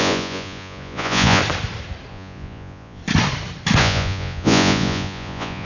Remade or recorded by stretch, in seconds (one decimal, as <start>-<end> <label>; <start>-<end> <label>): 0.0-1.4 remade; 1.4-2.1 recorded; 2.1-3.0 remade; 3.0-3.8 recorded; 3.8-5.7 remade